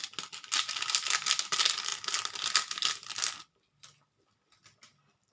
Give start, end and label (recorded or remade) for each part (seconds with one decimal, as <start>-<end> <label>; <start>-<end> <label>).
0.0-5.3 recorded